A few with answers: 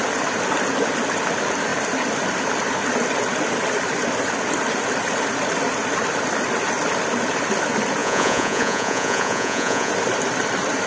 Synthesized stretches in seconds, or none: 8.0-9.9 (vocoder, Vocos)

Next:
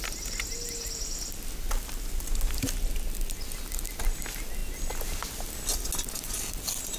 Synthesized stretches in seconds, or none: none

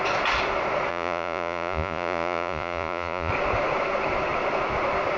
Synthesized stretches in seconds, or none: 0.9-3.3 (vocoder, Vocos)

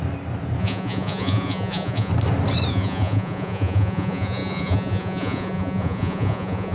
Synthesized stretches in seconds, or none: 0.6-2.1 (vocoder, Vocos); 2.7-6.7

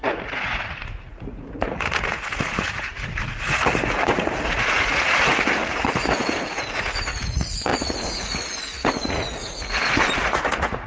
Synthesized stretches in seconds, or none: 0.0-10.9 (vocoder, Vocos)

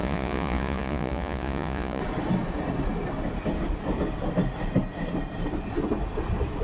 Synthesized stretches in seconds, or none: 0.0-2.0 (vocoder, Vocos)

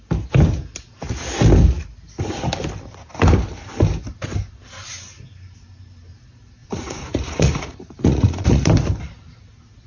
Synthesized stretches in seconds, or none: 6.6-8.7 (vocoder, Vocos)

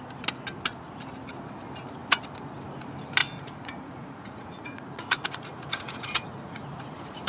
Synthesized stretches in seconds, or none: 3.2-7.3 (vocoder, Vocos)